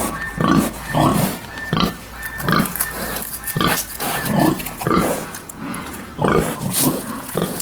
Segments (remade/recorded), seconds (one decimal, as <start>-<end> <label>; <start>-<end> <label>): 0.0-1.1 remade; 1.1-4.0 recorded; 4.0-6.1 remade; 6.1-6.7 recorded; 6.7-7.6 remade